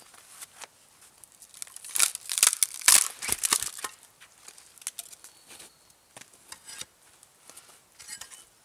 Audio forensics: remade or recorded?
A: recorded